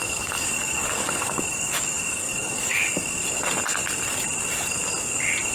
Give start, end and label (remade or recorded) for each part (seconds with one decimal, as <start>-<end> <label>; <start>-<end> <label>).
0.0-3.2 remade; 3.2-5.5 recorded